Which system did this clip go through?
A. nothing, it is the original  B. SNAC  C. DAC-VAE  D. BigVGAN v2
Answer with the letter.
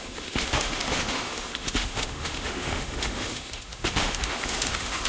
C